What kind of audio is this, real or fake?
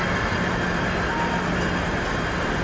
real